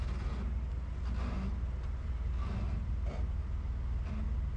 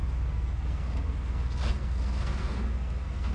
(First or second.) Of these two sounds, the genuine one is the first